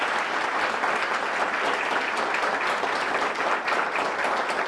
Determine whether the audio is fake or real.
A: real